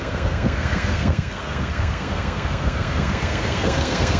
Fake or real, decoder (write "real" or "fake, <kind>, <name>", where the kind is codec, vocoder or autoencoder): fake, codec, SNAC